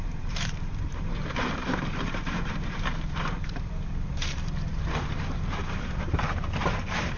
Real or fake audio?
fake